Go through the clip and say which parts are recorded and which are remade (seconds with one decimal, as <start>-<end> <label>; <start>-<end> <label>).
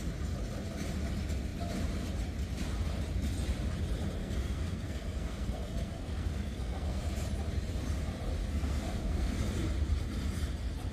0.0-4.2 recorded; 4.2-7.0 remade; 7.0-8.4 recorded; 8.4-9.4 remade; 9.4-10.9 recorded